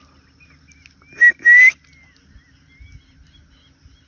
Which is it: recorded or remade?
recorded